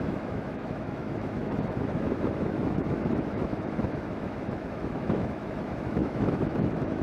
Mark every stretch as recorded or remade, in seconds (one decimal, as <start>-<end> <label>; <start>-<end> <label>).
0.0-7.0 remade